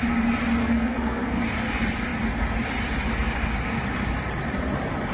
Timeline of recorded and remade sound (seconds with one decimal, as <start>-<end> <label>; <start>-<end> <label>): 0.0-0.6 recorded; 0.6-1.4 remade; 1.4-5.1 recorded